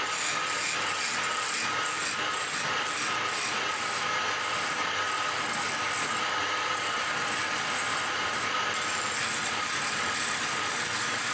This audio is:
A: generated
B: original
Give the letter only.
B